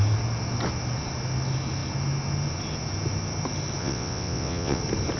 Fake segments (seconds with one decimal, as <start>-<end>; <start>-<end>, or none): 3.8-4.8